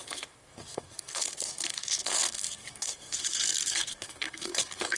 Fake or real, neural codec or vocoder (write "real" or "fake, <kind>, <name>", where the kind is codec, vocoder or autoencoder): fake, codec, SNAC